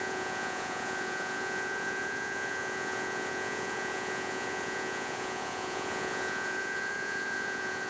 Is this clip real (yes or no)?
no